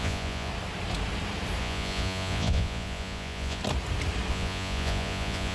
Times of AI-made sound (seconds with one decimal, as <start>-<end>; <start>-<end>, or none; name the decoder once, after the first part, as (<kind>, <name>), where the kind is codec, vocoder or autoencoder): 0.0-0.5 (vocoder, Vocos); 1.6-3.6; 4.3-5.5